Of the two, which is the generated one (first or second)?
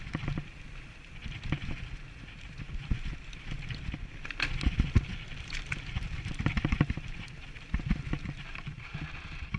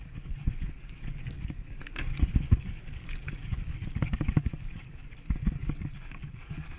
second